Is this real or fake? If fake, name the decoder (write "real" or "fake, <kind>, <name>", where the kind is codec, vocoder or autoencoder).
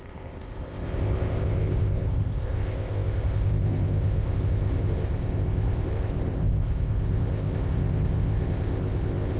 fake, codec, ZipCodec